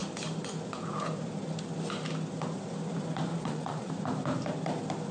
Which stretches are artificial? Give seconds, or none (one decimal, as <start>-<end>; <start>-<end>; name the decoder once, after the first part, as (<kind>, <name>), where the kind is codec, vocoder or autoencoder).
3.3-3.9 (vocoder, Vocos)